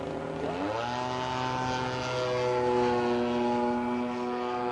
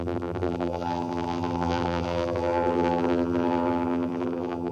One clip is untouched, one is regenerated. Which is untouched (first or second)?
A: first